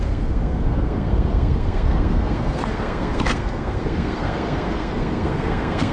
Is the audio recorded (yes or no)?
no